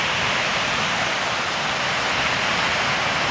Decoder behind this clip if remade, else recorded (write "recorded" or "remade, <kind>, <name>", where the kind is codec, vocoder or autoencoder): recorded